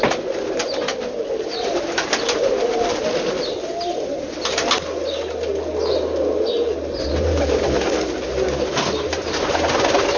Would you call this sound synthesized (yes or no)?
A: no